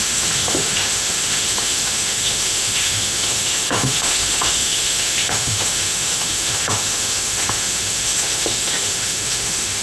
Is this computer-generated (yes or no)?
yes